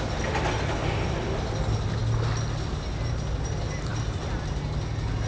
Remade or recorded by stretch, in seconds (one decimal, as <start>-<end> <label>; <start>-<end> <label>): 0.0-5.3 recorded